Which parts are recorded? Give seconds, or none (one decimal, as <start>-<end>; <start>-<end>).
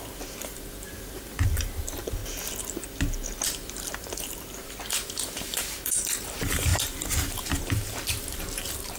2.2-3.4